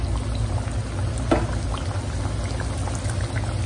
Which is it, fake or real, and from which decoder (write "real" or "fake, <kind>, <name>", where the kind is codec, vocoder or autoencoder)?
real